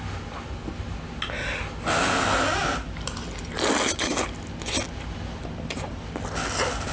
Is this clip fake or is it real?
real